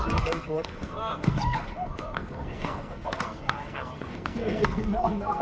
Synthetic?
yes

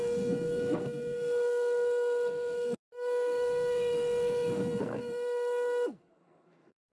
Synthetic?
yes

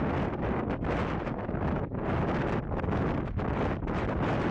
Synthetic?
no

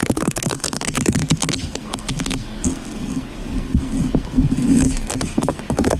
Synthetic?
yes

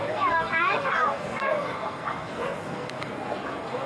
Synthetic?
yes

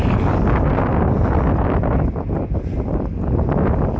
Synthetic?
no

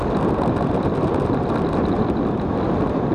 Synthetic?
no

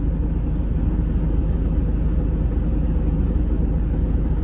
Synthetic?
no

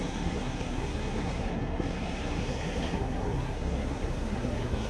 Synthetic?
yes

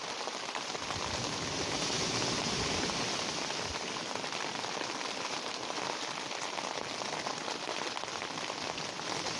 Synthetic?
no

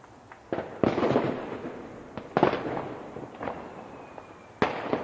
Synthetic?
no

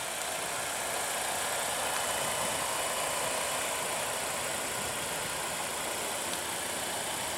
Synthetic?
no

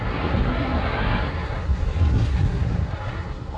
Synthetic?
yes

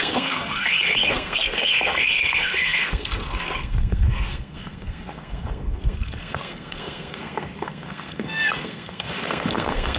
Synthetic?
yes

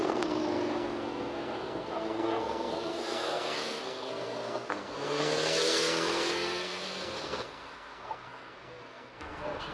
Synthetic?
yes